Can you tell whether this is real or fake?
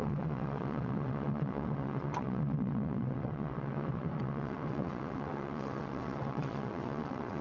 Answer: fake